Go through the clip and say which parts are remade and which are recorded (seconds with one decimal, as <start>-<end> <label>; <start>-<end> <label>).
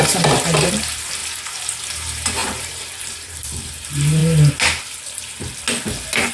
0.0-1.2 remade; 1.2-1.8 recorded; 1.8-4.2 remade; 4.2-6.3 recorded